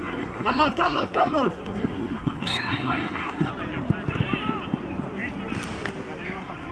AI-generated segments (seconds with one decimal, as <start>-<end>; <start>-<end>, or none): 0.0-3.5